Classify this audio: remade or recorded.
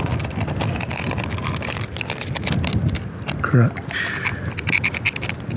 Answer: recorded